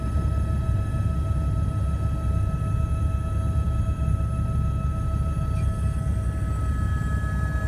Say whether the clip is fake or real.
real